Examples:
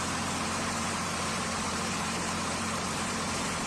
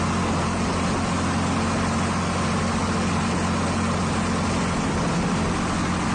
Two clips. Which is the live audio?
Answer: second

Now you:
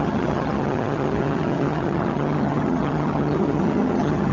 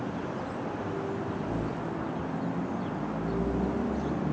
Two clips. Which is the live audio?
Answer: second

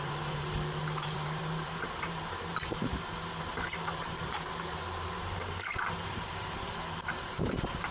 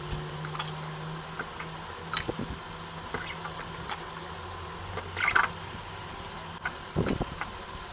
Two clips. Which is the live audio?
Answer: second